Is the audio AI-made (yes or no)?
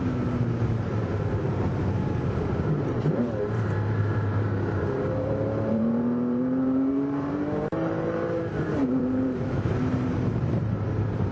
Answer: yes